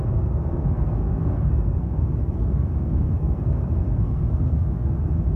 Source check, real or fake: fake